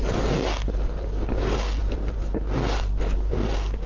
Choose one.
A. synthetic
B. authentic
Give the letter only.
B